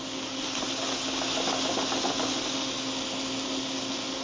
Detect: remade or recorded recorded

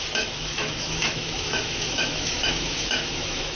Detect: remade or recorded remade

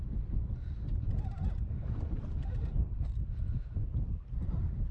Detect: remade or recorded recorded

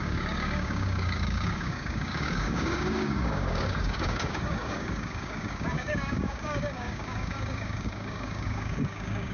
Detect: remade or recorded remade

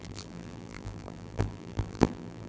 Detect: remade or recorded remade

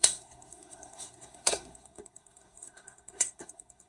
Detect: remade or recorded remade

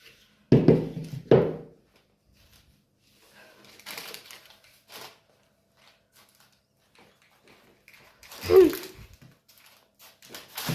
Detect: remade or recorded recorded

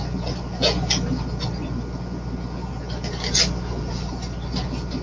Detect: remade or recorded recorded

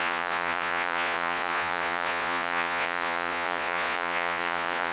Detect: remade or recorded remade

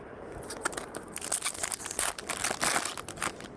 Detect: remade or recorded recorded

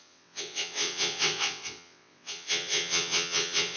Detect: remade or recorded remade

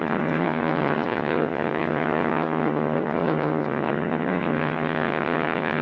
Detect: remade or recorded remade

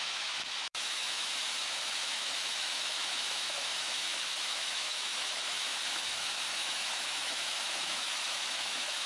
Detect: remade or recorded remade